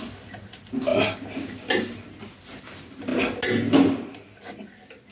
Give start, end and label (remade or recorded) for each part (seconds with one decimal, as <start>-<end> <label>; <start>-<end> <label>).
0.0-5.1 recorded